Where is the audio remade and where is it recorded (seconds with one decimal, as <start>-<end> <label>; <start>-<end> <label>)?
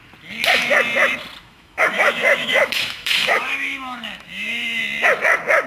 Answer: 0.0-1.4 recorded; 1.4-4.8 remade; 4.8-5.7 recorded